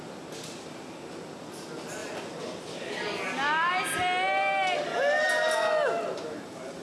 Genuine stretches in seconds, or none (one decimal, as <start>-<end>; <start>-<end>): 0.0-6.8